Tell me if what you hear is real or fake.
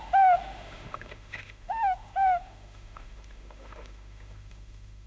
fake